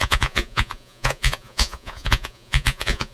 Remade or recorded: remade